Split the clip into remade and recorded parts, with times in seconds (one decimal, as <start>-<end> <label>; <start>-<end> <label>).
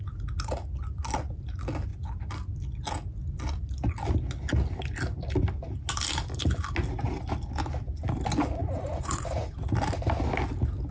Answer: 0.0-8.6 recorded; 8.6-9.7 remade; 9.7-10.9 recorded